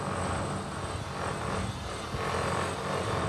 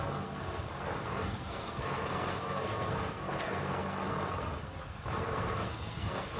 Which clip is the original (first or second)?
first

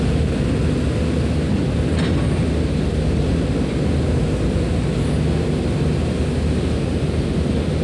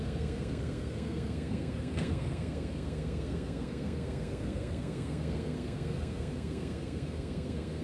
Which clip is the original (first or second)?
first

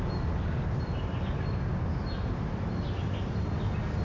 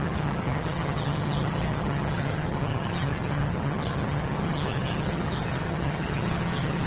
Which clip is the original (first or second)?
first